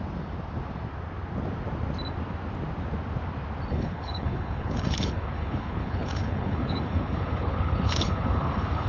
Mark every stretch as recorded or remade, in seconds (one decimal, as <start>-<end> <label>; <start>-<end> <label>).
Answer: 0.0-3.7 recorded; 3.7-8.9 remade